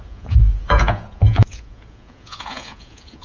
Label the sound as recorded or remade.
remade